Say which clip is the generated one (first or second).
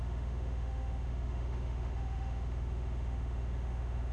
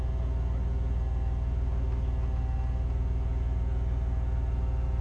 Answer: first